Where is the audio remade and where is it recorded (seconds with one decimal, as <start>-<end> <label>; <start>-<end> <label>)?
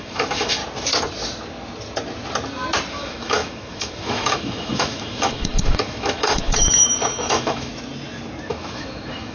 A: 0.0-0.6 remade; 0.6-2.9 recorded; 2.9-7.7 remade; 7.7-8.5 recorded; 8.5-9.3 remade